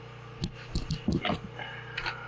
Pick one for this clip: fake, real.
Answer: real